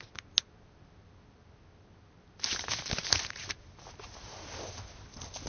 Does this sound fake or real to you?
real